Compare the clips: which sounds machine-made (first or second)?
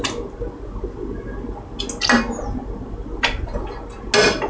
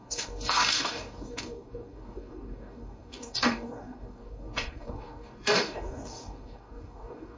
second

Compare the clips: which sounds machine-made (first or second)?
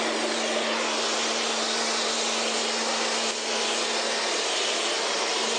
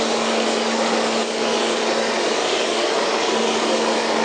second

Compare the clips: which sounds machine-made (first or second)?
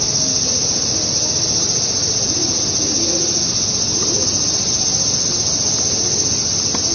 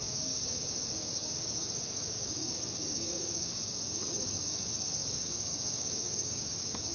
second